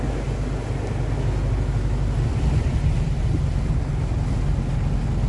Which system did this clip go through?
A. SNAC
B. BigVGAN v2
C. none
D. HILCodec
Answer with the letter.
C